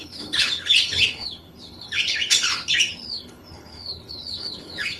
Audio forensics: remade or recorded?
remade